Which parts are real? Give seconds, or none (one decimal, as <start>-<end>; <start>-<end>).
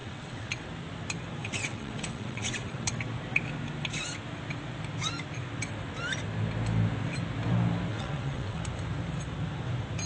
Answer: 0.7-1.4; 2.8-7.9; 8.6-10.1